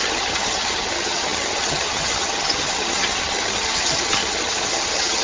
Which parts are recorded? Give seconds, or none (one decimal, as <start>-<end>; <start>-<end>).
none